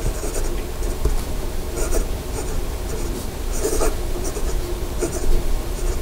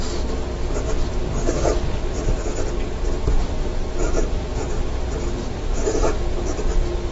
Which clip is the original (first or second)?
second